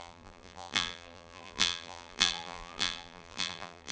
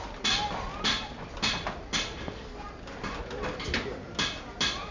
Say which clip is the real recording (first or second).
second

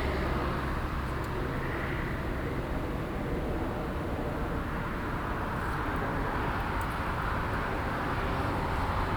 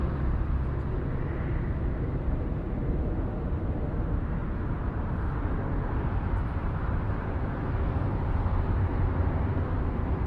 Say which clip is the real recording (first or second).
first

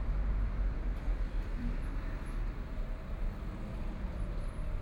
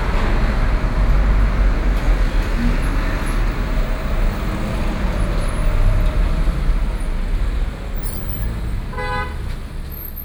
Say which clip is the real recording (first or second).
second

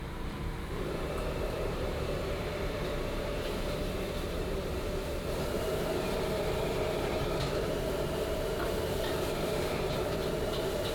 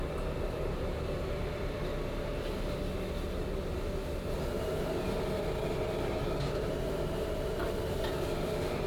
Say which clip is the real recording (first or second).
second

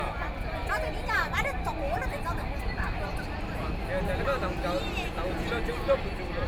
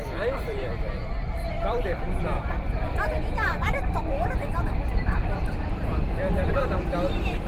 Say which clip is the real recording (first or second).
first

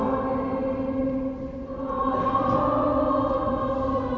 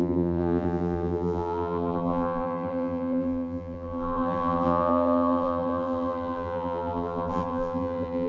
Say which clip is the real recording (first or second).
first